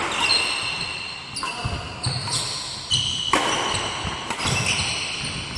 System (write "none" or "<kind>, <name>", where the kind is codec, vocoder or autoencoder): none